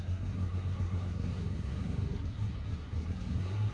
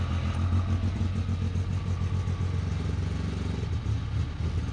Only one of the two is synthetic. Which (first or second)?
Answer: first